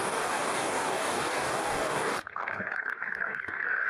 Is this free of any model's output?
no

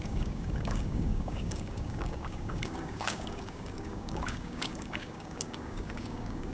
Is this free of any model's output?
no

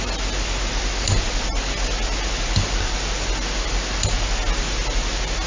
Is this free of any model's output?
yes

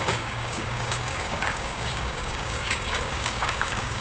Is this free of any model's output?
no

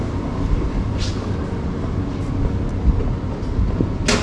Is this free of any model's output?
yes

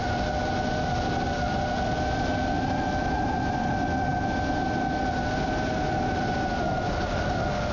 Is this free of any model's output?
yes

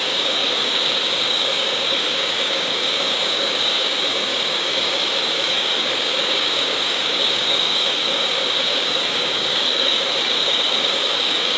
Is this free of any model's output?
no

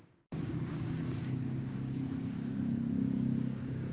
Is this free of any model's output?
no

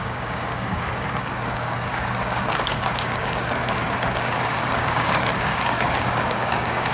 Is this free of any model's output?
no